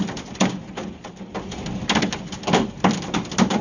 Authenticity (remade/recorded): remade